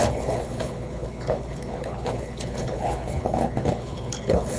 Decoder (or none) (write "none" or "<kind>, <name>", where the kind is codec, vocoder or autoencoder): codec, HILCodec